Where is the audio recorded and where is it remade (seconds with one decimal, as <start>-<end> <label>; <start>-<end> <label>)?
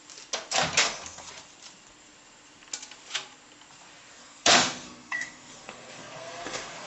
0.0-0.8 recorded; 0.8-1.3 remade; 1.3-4.2 recorded; 4.2-6.9 remade